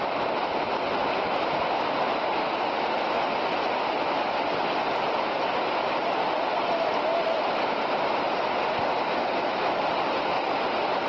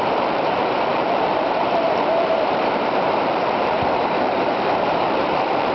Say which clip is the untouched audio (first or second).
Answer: first